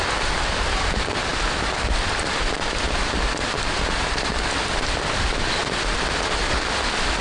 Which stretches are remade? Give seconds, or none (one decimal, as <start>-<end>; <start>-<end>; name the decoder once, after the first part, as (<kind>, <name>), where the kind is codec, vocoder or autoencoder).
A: none

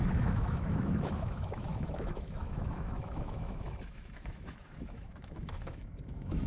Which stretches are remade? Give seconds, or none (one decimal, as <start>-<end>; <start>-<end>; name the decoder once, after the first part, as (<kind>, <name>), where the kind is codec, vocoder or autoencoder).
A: 0.0-6.5 (autoencoder, DAC-VAE)